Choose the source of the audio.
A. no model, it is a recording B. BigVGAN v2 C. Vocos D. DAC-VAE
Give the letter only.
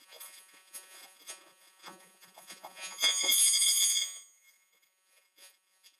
C